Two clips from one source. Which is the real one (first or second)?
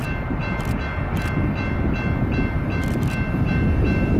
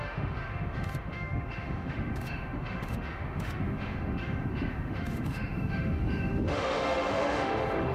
first